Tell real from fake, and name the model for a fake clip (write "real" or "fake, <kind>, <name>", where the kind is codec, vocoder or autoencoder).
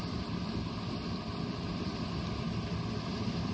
real